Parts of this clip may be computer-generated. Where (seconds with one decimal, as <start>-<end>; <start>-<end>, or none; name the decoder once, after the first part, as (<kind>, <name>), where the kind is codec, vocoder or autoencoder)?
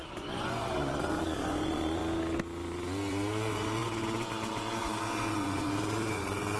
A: 0.0-2.0 (vocoder, Vocos); 3.1-6.6